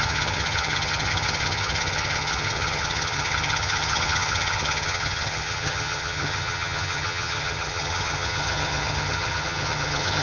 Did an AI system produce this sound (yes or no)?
yes